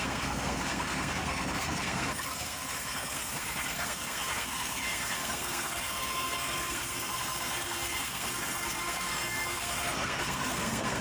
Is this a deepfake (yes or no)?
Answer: yes